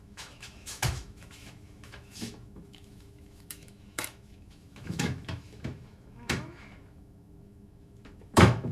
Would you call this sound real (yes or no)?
no